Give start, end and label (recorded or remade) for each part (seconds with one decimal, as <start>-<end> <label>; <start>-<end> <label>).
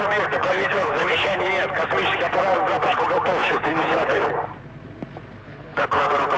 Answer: 0.0-0.4 recorded; 0.4-1.5 remade; 1.5-3.4 recorded; 3.4-4.2 remade; 4.2-5.4 recorded; 5.4-6.0 remade; 6.0-6.4 recorded